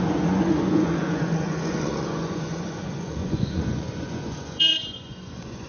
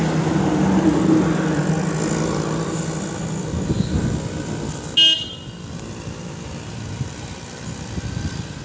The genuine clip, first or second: second